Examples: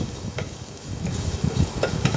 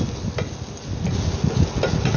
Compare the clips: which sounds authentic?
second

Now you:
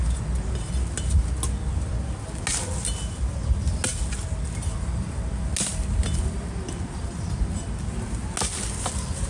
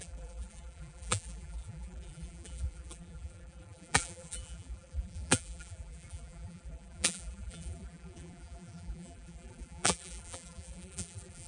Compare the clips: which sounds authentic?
first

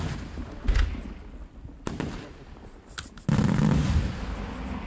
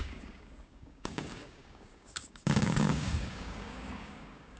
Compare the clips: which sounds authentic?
first